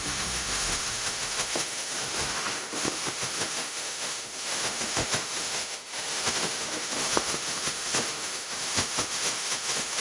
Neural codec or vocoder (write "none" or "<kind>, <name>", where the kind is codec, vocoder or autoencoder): autoencoder, DAC-VAE